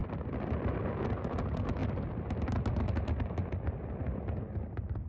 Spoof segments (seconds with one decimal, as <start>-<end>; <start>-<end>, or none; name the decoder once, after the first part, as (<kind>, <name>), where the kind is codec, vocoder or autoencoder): none